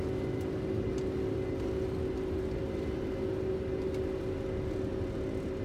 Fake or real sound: real